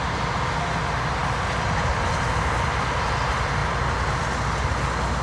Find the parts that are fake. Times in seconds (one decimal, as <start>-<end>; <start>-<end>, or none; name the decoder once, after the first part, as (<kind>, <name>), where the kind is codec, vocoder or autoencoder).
none